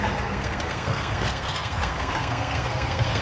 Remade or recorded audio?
remade